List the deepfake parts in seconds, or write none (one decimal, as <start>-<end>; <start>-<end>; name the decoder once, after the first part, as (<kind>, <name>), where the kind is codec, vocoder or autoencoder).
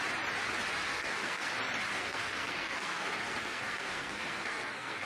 0.9-1.5 (codec, SNAC); 1.9-5.1